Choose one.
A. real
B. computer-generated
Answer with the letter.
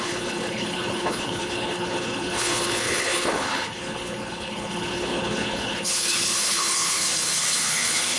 B